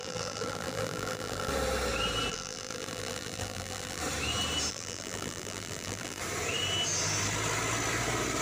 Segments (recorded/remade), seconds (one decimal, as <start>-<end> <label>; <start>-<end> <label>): 0.0-1.5 remade; 1.5-2.3 recorded; 2.3-4.0 remade; 4.0-4.7 recorded; 4.7-6.2 remade; 6.2-8.4 recorded